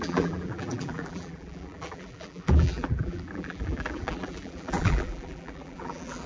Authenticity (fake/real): fake